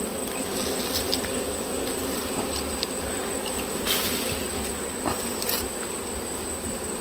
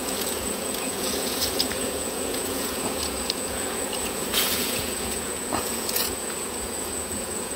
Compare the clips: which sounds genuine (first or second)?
first